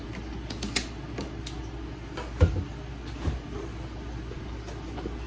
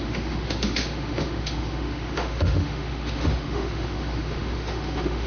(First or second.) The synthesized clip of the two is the second